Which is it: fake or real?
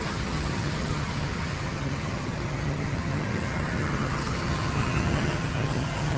fake